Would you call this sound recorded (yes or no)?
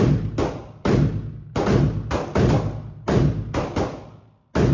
yes